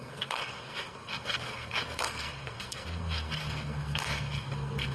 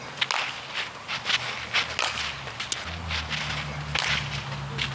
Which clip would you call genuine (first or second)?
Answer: second